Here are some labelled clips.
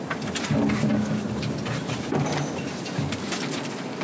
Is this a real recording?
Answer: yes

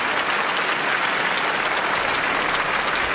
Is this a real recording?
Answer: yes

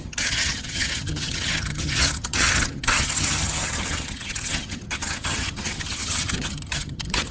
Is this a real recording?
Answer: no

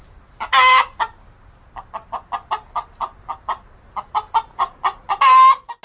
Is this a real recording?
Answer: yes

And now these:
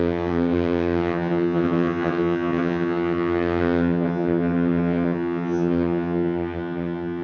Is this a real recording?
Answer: no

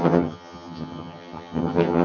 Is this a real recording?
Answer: no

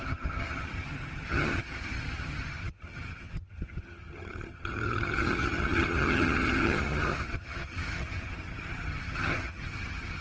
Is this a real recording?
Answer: no